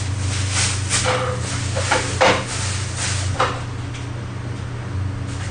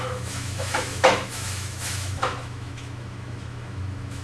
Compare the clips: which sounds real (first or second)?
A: first